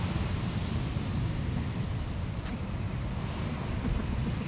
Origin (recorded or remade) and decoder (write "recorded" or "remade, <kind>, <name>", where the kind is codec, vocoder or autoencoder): recorded